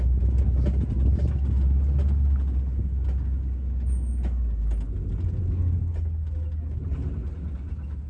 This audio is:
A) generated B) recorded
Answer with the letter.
B